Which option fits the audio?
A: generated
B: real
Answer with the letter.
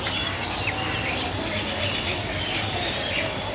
B